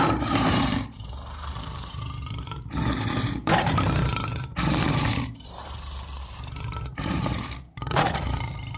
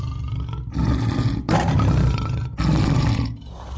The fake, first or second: first